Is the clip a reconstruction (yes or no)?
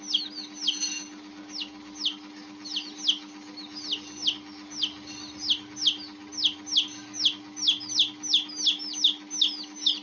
no